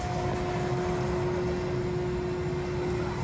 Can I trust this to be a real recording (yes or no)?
yes